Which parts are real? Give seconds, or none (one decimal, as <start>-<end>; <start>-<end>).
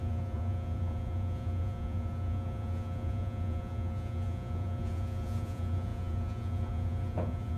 none